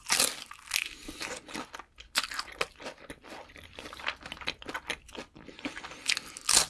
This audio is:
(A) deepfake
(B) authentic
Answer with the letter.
B